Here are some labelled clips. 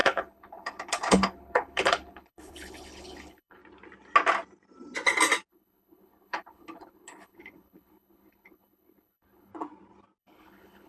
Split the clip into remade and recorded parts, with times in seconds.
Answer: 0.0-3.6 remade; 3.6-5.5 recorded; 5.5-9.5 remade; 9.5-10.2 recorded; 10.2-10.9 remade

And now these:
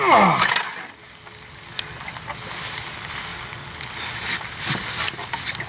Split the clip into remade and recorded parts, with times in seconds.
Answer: 0.0-5.7 recorded

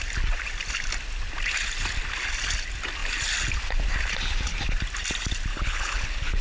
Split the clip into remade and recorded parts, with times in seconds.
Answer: 0.0-5.5 recorded; 5.5-6.4 remade

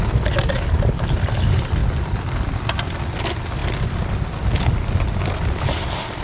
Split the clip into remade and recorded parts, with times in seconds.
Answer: 0.0-6.2 recorded

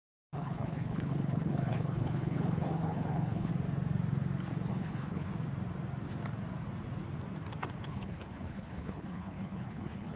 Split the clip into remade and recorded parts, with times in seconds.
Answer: 0.0-3.5 remade; 3.5-4.7 recorded; 4.7-5.3 remade; 5.3-7.8 recorded; 7.8-10.2 remade

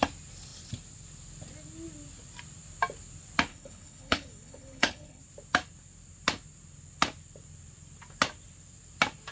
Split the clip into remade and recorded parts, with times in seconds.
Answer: 0.0-3.5 recorded; 3.5-5.2 remade; 5.2-9.3 recorded

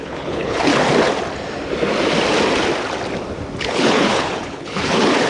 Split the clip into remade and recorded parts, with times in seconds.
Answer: 0.0-0.7 remade; 0.7-3.6 recorded; 3.6-5.3 remade